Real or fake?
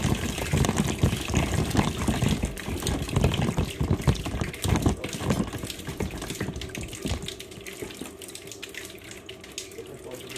real